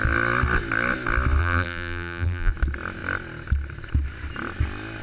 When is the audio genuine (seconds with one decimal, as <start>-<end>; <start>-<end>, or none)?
0.0-1.4; 2.5-5.0